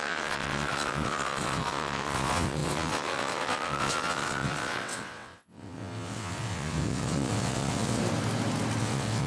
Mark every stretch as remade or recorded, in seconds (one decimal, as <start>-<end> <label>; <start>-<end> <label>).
0.0-8.0 remade; 8.0-8.8 recorded; 8.8-9.3 remade